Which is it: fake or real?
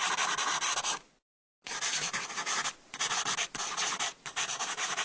real